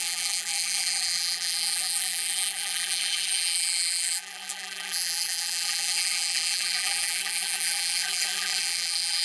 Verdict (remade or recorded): remade